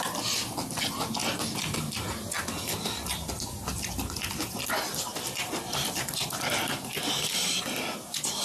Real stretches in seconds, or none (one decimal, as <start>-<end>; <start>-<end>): 0.0-8.4